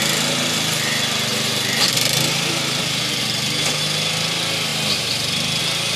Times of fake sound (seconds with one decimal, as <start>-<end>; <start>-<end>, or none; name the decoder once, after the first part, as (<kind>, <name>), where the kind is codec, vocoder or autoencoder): 1.3-3.0 (vocoder, BigVGAN v2)